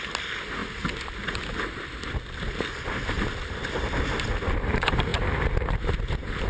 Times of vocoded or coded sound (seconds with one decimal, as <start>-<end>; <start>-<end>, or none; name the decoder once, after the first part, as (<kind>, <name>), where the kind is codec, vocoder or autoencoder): none